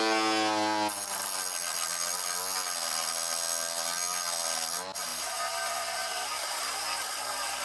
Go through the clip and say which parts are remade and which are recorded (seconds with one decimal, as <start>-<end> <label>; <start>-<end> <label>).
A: 0.0-5.1 recorded; 5.1-7.6 remade